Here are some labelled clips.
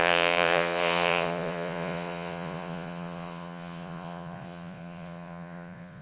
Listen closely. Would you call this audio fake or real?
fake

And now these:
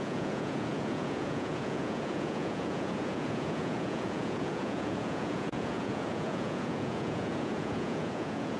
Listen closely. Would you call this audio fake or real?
fake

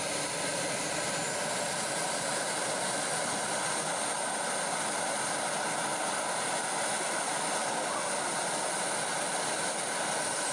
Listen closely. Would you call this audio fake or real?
real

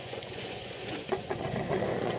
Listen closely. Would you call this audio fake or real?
fake